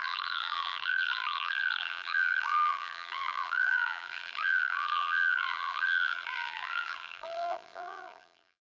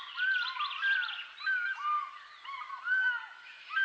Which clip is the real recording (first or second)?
second